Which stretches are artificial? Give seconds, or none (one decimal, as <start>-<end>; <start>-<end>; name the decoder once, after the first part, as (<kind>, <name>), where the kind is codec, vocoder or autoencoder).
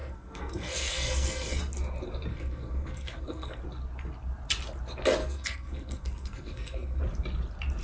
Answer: 0.0-1.6 (codec, SNAC); 2.3-3.6; 5.2-7.0